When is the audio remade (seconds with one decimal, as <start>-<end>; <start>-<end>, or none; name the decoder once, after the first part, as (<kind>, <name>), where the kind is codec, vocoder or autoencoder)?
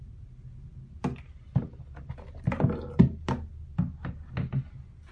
none